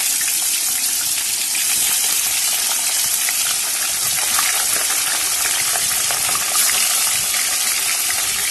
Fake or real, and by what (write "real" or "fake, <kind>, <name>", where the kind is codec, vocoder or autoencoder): fake, vocoder, BigVGAN v2